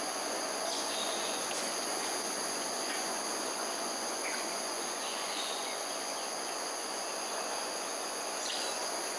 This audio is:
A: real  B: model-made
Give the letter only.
B